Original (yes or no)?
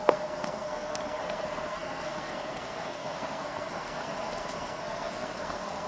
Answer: no